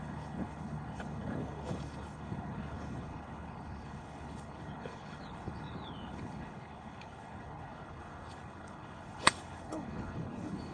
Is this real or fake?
fake